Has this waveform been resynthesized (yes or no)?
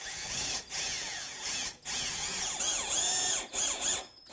yes